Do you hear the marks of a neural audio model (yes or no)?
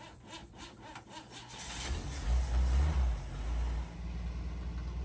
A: no